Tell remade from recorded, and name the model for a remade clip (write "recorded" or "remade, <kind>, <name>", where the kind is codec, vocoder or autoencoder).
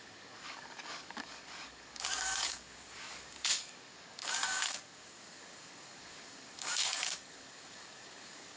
remade, codec, DAC